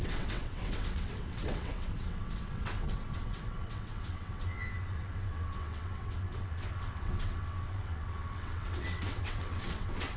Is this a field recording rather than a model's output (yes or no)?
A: no